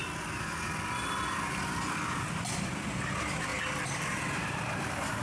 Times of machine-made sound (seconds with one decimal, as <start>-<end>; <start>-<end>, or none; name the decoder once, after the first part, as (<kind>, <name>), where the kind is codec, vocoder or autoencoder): 2.0-5.2 (vocoder, BigVGAN v2)